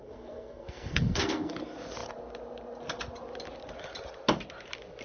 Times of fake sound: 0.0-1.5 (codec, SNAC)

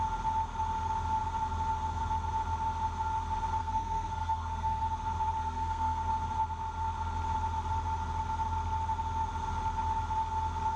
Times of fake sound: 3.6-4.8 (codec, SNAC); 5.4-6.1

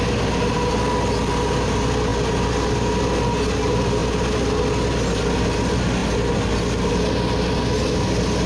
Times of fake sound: none

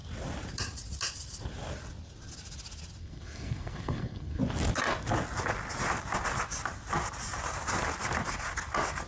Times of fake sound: 3.0-4.4 (codec, SNAC)